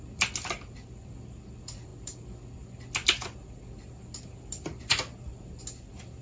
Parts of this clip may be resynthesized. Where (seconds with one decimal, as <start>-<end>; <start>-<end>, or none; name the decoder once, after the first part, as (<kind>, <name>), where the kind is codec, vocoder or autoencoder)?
none